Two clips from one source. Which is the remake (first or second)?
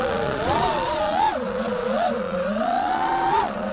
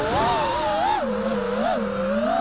first